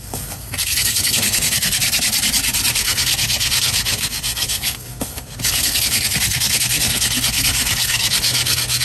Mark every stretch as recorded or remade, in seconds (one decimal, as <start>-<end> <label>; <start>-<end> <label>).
0.0-1.8 remade; 1.8-2.7 recorded; 2.7-8.8 remade